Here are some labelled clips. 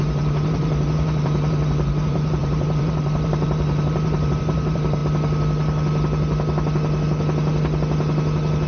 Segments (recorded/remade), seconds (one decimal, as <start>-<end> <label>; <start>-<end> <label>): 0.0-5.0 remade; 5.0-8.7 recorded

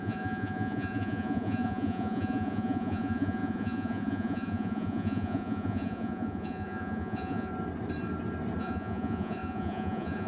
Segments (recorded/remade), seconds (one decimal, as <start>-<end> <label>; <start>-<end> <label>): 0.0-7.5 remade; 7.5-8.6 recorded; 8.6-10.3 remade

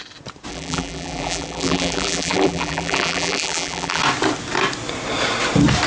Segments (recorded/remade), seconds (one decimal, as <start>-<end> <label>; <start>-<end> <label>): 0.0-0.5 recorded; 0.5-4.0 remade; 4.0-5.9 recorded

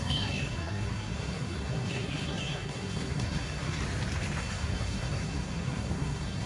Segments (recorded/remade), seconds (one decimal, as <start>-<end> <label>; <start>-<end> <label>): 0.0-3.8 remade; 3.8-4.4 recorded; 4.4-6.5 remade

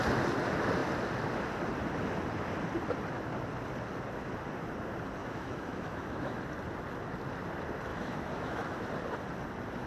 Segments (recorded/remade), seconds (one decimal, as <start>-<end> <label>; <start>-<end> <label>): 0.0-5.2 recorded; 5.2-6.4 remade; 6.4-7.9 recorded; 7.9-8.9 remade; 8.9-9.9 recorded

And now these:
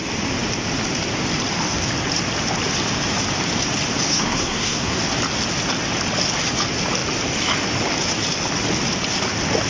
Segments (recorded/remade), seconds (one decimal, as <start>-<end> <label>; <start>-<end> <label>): 0.0-4.1 recorded; 4.1-5.0 remade; 5.0-9.7 recorded

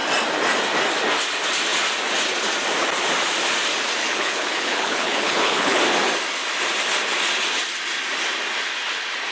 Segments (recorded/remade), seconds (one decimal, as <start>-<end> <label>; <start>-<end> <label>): 0.0-4.0 recorded; 4.0-5.8 remade; 5.8-9.3 recorded

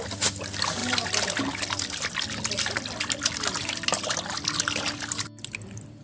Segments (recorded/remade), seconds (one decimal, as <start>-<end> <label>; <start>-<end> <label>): 0.0-6.0 recorded